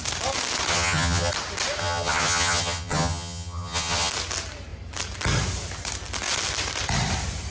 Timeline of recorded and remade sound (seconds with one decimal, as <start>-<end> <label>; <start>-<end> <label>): 0.0-0.7 recorded; 0.7-1.3 remade; 1.3-1.8 recorded; 1.8-4.1 remade; 4.1-7.5 recorded

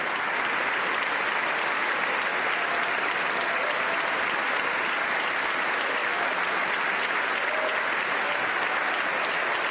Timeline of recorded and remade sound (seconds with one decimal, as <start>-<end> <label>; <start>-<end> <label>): 0.0-9.7 recorded